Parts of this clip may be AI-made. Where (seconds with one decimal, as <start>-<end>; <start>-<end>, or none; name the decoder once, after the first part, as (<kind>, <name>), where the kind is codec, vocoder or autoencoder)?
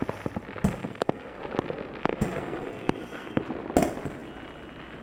0.8-1.4 (codec, SNAC); 2.0-3.4